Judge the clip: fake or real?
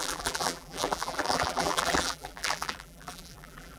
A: fake